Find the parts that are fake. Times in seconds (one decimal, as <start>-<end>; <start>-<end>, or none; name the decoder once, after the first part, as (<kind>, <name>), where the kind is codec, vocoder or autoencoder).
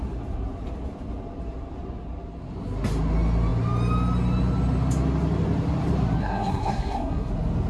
6.2-7.3 (codec, SNAC)